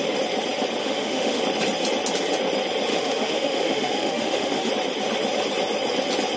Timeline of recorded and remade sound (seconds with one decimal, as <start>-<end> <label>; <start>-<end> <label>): 0.0-0.8 recorded; 0.8-1.4 remade; 1.4-2.9 recorded; 2.9-4.7 remade; 4.7-6.4 recorded